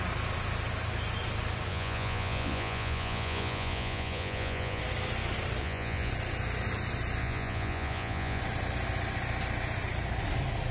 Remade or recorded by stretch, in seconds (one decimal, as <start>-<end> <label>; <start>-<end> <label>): 0.0-1.7 recorded; 1.7-4.8 remade; 4.8-5.6 recorded; 5.6-6.1 remade; 6.1-7.2 recorded; 7.2-8.4 remade; 8.4-10.7 recorded